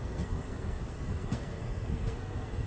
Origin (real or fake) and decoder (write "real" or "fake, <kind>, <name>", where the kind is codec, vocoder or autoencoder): fake, codec, SNAC